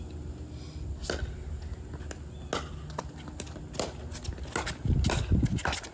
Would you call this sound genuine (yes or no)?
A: yes